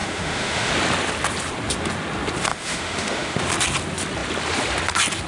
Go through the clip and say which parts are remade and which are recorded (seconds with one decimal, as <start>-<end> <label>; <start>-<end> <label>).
0.0-0.7 remade; 0.7-2.5 recorded; 2.5-3.4 remade; 3.4-5.3 recorded